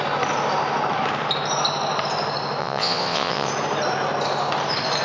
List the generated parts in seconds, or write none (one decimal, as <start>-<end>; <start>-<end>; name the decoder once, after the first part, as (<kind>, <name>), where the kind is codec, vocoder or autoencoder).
2.6-3.5 (vocoder, WaveNeXt)